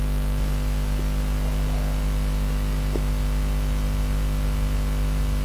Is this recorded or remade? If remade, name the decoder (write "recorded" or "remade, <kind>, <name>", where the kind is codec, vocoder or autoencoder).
recorded